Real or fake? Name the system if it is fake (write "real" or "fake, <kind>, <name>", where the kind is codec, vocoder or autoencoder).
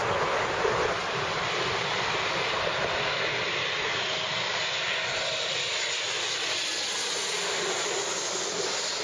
real